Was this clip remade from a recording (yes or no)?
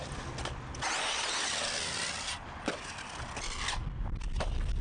no